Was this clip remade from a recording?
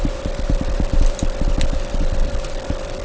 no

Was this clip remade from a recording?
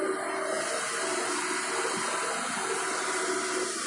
no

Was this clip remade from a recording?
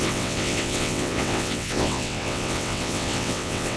yes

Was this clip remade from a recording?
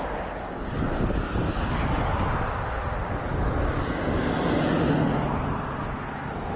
no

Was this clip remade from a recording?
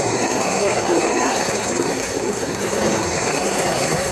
yes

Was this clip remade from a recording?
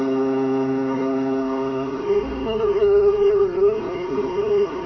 yes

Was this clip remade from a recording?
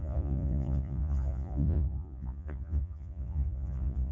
yes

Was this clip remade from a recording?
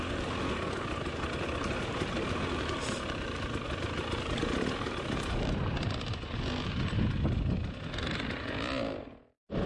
no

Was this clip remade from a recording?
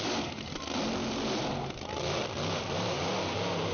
yes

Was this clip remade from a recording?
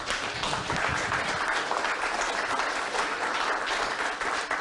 no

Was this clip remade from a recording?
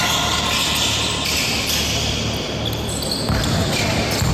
no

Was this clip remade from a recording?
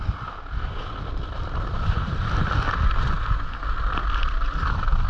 no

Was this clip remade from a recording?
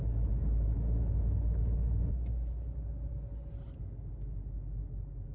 no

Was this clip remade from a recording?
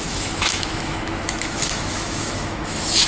yes